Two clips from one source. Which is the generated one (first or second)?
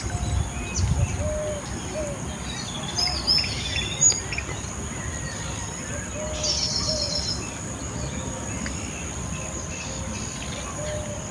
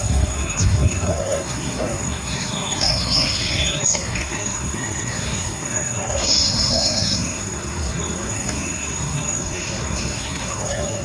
second